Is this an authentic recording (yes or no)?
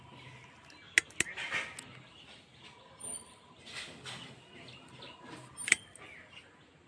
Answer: yes